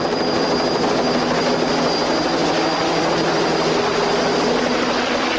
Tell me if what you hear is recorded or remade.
recorded